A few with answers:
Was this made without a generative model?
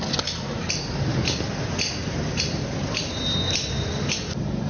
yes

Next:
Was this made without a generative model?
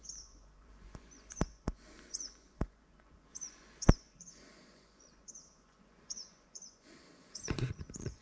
no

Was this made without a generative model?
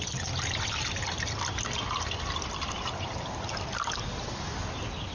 yes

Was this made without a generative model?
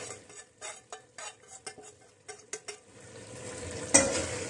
yes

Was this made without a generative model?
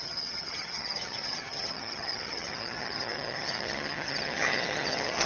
no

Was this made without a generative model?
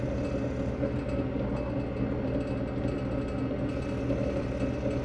yes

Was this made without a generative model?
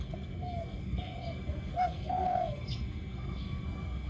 no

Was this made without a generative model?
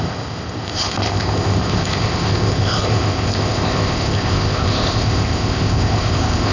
no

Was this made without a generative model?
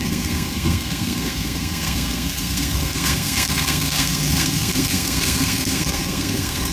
no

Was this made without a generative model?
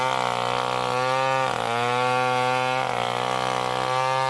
yes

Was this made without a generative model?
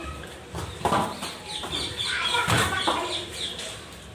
no